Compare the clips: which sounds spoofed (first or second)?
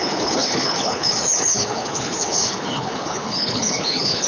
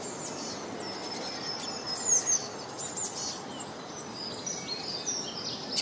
first